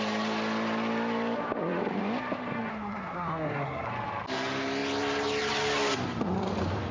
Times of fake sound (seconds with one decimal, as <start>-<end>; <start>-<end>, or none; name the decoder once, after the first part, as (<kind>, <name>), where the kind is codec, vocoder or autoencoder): 2.7-3.9 (codec, SNAC)